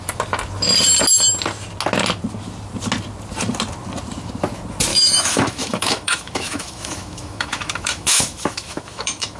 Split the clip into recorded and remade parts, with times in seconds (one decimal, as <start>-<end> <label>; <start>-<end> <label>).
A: 0.0-4.9 recorded; 4.9-9.4 remade